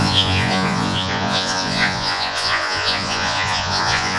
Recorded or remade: remade